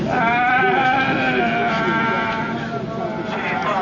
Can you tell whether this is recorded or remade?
recorded